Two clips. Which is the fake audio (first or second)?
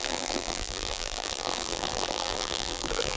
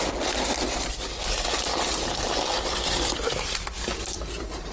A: first